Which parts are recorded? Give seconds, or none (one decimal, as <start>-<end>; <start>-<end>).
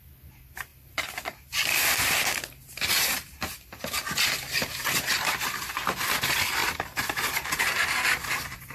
0.0-6.6; 7.6-8.7